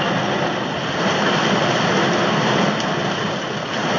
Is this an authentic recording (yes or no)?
yes